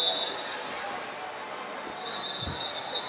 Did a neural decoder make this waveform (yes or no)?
no